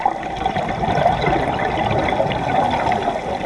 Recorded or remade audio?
recorded